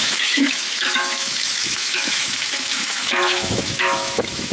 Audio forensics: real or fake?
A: fake